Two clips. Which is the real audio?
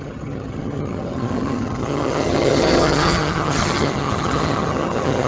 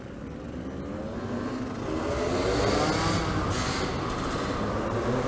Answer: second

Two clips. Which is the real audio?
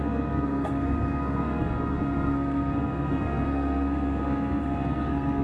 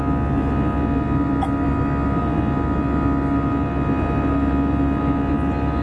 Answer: second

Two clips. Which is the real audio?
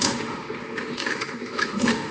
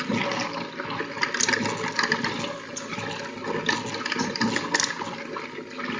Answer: second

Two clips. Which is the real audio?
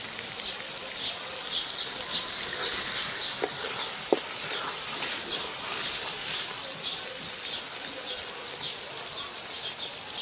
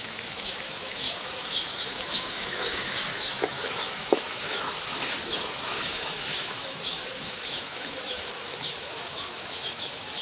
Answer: first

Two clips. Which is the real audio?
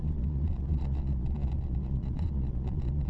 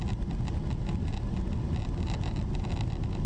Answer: second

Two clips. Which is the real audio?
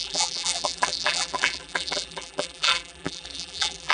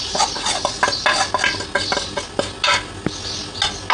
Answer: second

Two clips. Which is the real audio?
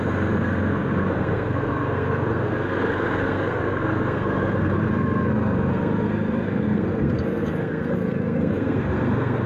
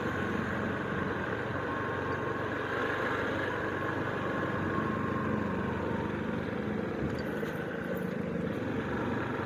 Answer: second